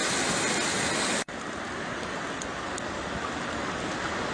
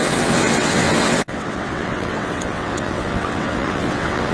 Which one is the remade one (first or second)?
second